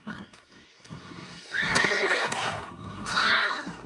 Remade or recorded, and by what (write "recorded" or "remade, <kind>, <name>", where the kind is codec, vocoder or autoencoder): remade, codec, SNAC